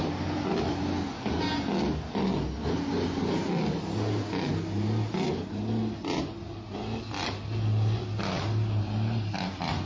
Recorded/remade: recorded